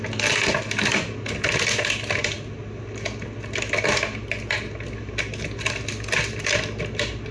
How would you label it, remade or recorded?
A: recorded